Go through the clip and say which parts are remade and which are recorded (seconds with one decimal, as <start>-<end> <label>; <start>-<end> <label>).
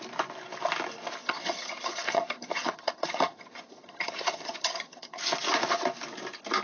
0.0-1.2 recorded; 1.2-5.2 remade; 5.2-6.6 recorded